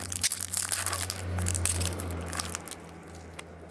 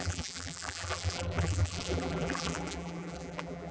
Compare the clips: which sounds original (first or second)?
first